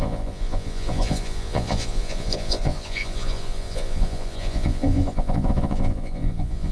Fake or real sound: fake